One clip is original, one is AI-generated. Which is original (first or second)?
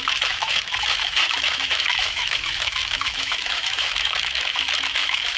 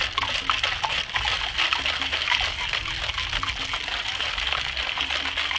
second